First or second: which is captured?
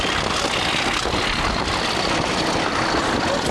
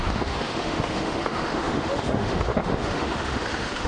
first